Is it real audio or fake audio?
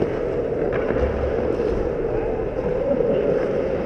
real